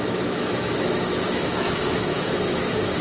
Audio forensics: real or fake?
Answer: fake